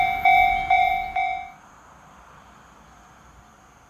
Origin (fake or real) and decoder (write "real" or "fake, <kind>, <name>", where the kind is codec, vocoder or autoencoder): fake, vocoder, BigVGAN v2